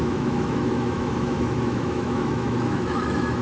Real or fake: fake